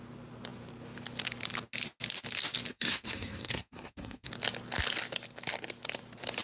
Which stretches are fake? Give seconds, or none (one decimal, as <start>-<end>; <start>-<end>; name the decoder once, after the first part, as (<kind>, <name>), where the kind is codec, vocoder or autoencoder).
2.7-4.3 (codec, SNAC)